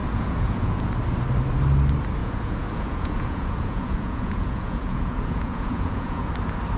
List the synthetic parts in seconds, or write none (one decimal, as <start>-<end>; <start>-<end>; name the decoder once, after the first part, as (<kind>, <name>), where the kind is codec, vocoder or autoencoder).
0.0-0.9 (vocoder, Vocos); 2.2-6.3